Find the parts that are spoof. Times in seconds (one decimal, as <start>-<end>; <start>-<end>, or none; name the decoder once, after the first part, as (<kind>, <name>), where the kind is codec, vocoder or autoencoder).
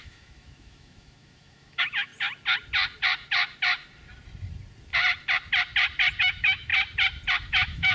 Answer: 0.0-2.1 (autoencoder, DAC-VAE); 6.2-6.7; 7.5-7.9